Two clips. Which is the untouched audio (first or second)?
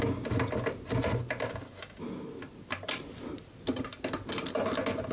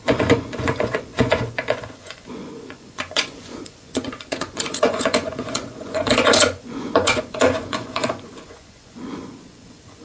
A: first